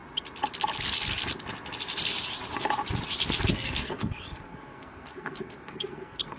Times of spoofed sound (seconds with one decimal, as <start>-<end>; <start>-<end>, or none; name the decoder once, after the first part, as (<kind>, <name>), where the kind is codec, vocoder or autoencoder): 3.5-6.4 (codec, SNAC)